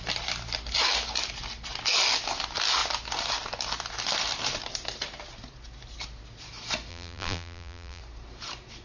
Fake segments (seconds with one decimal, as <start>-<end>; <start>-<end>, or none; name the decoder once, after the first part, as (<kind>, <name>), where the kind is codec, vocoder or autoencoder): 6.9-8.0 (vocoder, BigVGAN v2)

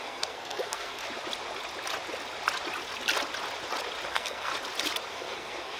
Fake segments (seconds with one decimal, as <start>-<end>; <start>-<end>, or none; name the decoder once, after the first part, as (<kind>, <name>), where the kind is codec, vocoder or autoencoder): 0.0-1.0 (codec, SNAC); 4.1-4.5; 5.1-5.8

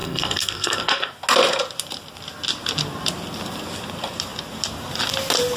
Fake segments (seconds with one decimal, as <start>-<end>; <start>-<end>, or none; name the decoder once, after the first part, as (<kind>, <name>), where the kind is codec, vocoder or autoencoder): 0.0-1.1 (codec, SNAC)